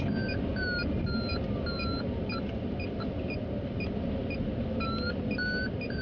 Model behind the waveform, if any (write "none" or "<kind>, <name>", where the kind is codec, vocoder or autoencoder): none